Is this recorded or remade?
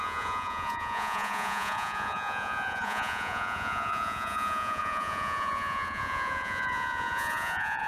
remade